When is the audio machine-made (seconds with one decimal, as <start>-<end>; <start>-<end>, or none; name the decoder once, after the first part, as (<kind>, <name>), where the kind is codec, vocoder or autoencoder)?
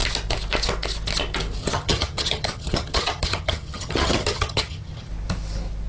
1.6-5.1 (vocoder, HiFi-GAN)